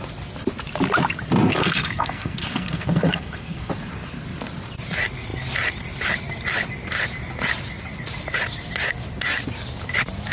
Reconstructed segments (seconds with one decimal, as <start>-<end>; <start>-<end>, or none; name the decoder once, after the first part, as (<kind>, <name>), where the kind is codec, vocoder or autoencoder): 1.5-3.7 (codec, SNAC)